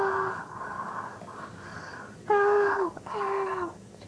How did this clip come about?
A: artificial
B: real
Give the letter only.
A